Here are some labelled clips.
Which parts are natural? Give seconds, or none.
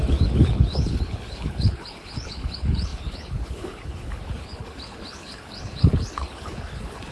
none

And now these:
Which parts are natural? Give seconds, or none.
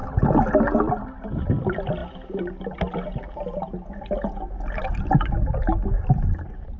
0.0-6.8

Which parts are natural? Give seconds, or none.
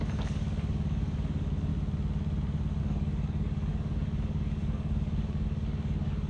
1.7-2.8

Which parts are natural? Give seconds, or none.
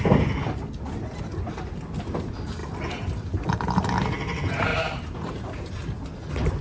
0.0-4.7; 5.7-6.6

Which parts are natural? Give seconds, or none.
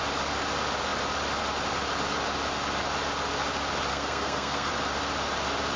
0.0-3.9; 4.7-5.8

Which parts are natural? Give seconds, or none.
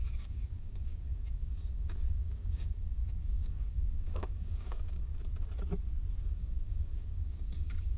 5.1-6.2